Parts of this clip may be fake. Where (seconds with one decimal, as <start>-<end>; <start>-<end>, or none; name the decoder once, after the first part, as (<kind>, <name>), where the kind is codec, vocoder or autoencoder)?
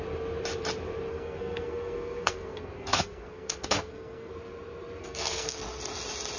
1.1-4.3 (codec, SNAC); 5.0-5.6